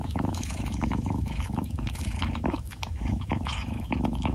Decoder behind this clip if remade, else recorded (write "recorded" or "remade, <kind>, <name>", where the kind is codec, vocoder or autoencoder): remade, autoencoder, DAC-VAE